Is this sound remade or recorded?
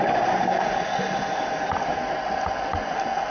recorded